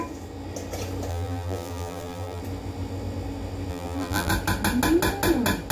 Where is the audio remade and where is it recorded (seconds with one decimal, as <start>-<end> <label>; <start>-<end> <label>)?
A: 0.0-1.1 recorded; 1.1-2.4 remade; 2.4-3.7 recorded; 3.7-4.3 remade; 4.3-5.7 recorded